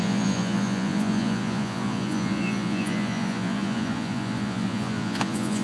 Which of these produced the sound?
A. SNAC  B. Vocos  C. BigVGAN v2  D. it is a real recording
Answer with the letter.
B